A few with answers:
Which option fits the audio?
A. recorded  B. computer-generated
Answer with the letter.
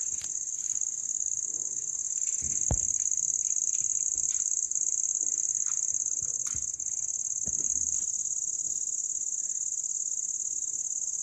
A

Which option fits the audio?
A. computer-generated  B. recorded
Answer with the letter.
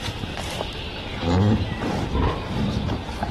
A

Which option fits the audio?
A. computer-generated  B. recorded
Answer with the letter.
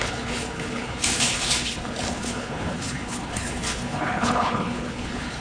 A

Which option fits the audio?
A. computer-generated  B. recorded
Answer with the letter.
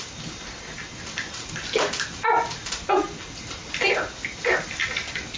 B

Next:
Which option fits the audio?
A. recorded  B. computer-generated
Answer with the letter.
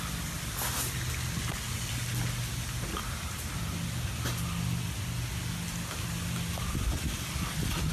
A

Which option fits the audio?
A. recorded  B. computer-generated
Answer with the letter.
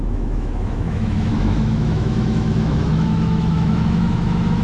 B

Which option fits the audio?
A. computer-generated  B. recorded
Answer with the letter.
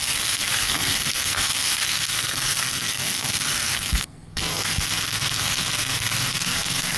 A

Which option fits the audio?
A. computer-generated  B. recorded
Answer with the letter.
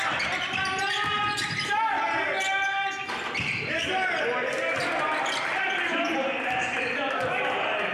B